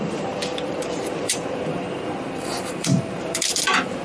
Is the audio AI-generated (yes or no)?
yes